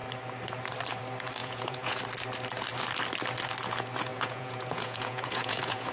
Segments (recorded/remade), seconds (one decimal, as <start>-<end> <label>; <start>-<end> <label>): 0.0-1.4 recorded; 1.4-2.0 remade; 2.0-4.1 recorded; 4.1-5.9 remade